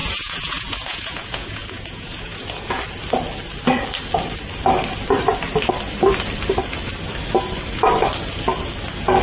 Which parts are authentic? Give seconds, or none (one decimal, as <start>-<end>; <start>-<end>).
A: 2.8-9.2